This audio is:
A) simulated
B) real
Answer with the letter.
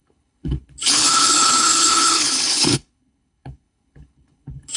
A